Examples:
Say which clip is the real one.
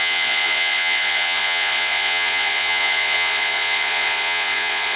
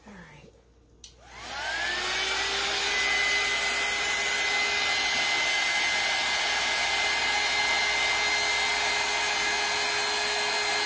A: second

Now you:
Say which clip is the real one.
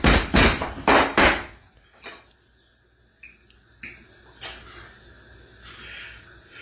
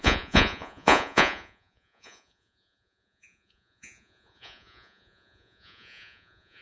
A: first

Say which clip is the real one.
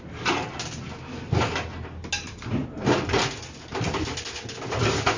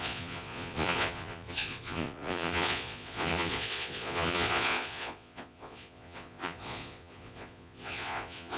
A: first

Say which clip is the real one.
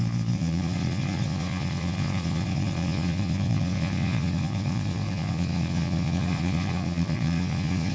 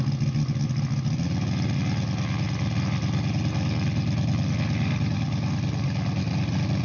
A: second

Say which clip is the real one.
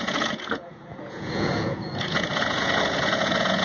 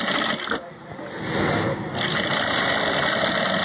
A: second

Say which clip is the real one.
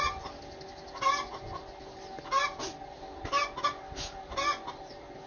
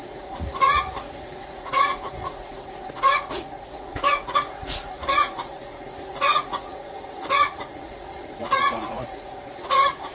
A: first